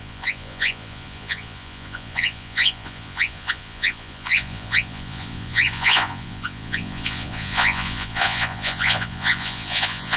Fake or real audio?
fake